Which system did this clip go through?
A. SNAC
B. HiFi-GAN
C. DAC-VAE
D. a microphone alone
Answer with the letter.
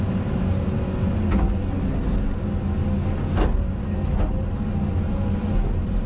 D